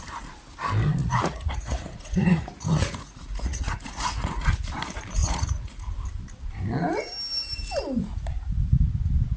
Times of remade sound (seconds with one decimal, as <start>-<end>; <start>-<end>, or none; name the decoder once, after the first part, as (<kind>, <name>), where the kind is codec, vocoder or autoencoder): 1.0-4.6 (vocoder, Vocos); 5.2-5.9

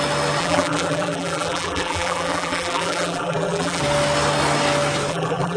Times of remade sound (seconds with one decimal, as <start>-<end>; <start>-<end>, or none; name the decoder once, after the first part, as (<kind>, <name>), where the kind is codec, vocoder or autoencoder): 0.4-3.8 (vocoder, BigVGAN v2); 5.1-5.6

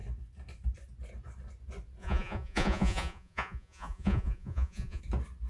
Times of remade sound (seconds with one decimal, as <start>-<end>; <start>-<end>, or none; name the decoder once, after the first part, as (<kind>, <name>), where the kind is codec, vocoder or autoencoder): 2.0-5.0 (vocoder, Vocos)

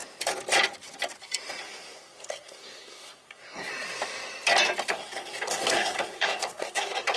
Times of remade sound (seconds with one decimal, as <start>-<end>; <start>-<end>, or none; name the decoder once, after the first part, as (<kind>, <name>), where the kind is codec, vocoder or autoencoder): 1.6-3.7 (codec, SNAC); 4.9-7.2

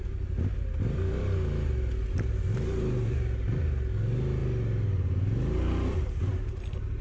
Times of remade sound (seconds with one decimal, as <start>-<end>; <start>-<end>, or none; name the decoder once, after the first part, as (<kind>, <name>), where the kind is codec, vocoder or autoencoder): none